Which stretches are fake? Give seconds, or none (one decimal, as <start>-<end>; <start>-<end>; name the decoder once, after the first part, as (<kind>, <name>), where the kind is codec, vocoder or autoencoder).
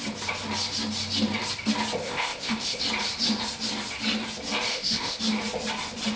2.0-2.8 (codec, ZipCodec); 4.7-5.2